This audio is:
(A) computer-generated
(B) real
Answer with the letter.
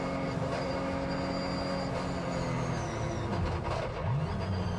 B